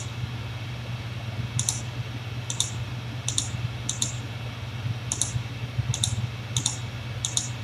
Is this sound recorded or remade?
recorded